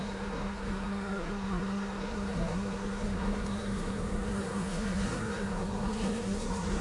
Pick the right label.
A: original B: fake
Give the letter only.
B